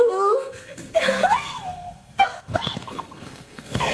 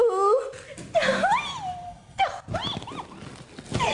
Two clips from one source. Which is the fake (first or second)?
first